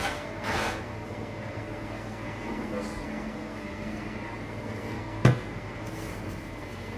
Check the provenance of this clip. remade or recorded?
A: remade